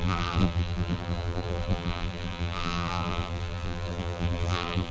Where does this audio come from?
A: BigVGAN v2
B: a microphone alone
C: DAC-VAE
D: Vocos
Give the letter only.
A